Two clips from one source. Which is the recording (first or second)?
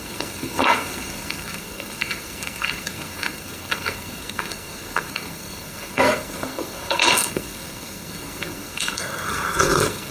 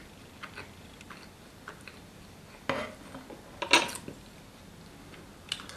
second